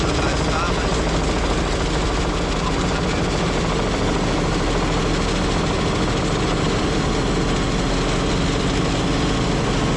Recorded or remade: recorded